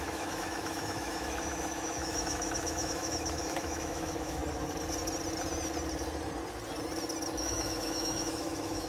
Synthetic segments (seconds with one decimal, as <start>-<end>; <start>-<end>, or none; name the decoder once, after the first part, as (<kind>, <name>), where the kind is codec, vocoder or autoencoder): 0.0-4.4 (autoencoder, DAC-VAE); 7.4-8.9